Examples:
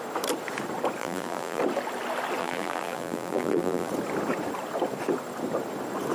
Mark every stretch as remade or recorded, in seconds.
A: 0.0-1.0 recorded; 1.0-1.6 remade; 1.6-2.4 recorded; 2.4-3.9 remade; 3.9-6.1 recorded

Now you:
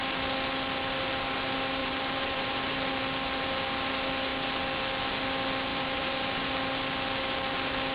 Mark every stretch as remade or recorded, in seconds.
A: 0.0-1.8 recorded; 1.8-2.9 remade; 2.9-5.7 recorded; 5.7-6.5 remade; 6.5-7.9 recorded